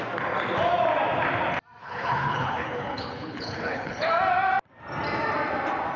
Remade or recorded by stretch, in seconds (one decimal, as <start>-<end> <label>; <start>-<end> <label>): 0.0-1.8 recorded; 1.8-4.1 remade; 4.1-6.0 recorded